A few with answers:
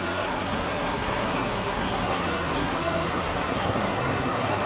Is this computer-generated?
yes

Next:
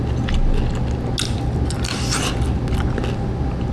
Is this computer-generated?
no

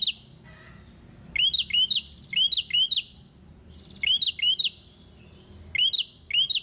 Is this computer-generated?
no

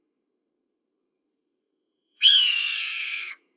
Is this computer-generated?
yes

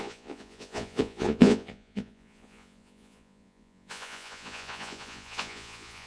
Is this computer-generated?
yes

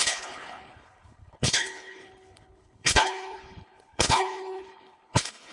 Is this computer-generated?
yes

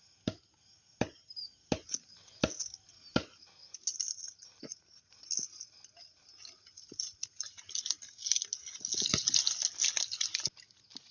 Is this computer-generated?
no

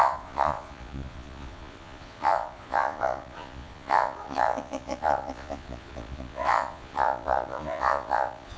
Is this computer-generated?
yes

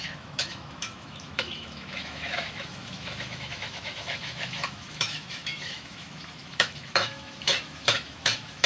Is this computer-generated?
yes